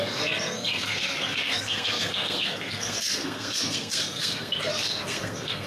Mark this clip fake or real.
fake